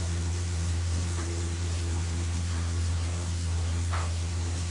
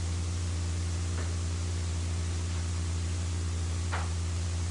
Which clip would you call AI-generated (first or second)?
first